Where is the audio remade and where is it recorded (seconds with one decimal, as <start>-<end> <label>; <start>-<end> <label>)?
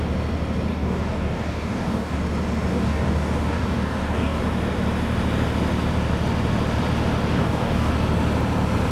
0.0-0.7 recorded; 0.7-2.2 remade; 2.2-2.7 recorded; 2.7-4.4 remade; 4.4-7.3 recorded; 7.3-7.9 remade; 7.9-8.9 recorded